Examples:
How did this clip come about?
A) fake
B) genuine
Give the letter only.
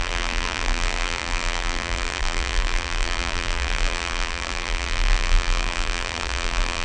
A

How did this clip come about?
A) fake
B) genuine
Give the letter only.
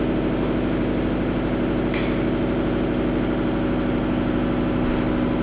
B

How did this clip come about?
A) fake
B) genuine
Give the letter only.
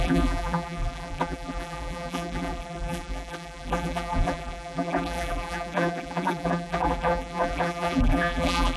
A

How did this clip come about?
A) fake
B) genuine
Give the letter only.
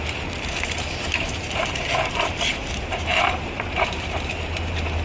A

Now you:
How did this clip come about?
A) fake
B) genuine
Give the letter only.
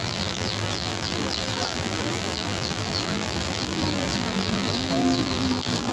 A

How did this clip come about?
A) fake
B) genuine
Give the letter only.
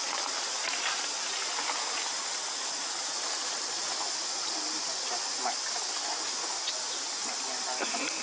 B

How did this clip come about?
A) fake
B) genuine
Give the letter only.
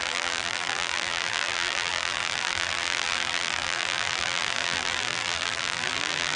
A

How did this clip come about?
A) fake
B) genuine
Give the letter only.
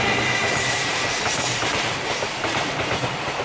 B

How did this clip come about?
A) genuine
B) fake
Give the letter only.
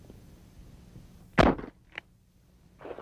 A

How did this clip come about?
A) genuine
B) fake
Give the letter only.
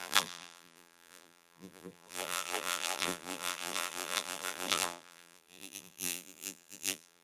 B